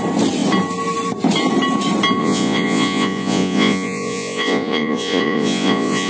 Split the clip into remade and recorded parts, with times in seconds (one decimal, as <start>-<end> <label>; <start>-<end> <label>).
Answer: 0.0-2.2 recorded; 2.2-6.1 remade